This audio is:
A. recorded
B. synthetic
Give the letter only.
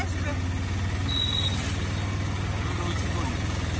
A